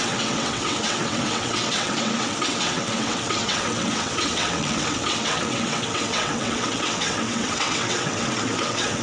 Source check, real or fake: fake